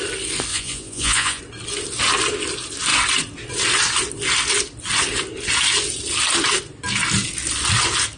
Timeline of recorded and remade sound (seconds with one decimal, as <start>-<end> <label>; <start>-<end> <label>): 0.0-0.5 recorded; 0.5-1.4 remade; 1.4-8.2 recorded